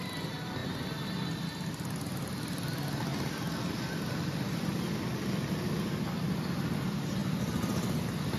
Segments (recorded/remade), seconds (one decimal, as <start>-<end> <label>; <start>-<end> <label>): 0.0-8.4 recorded